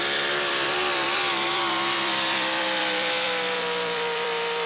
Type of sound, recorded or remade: remade